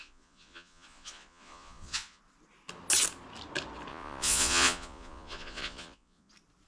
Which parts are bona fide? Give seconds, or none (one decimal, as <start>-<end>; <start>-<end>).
2.2-3.9; 6.3-6.7